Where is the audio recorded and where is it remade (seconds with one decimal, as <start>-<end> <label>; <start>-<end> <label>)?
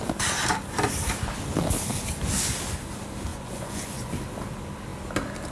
0.0-3.3 recorded; 3.3-4.1 remade; 4.1-5.5 recorded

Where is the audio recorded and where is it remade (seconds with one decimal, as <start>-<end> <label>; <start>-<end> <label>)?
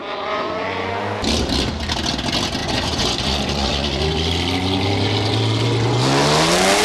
0.0-0.9 remade; 0.9-2.6 recorded; 2.6-4.0 remade; 4.0-6.8 recorded